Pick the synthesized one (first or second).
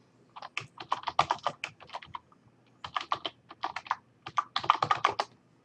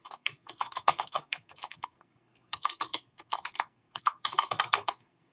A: second